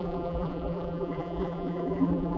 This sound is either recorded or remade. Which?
remade